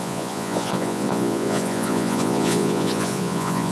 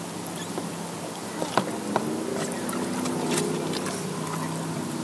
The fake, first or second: first